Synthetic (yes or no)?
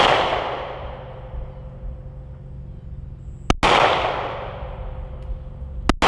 no